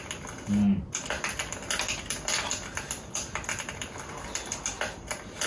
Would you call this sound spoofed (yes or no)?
no